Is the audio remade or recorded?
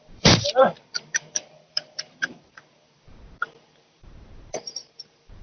remade